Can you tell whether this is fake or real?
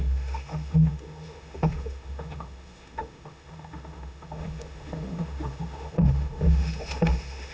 fake